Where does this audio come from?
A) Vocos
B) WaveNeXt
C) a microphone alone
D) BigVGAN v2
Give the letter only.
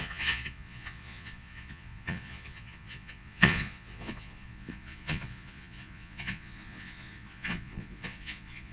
A